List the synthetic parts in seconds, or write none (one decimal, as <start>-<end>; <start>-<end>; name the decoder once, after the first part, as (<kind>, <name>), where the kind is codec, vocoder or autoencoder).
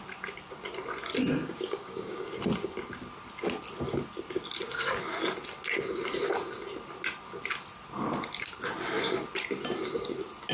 1.4-2.3 (codec, DAC)